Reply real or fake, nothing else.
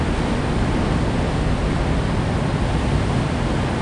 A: real